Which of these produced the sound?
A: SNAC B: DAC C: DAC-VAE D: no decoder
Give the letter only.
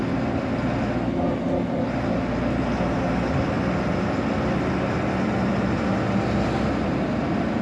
D